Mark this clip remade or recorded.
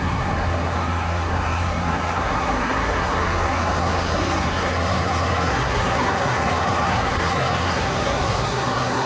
remade